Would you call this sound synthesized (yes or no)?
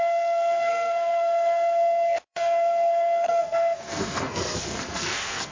yes